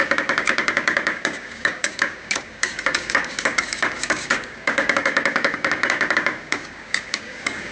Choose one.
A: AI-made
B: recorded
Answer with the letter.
A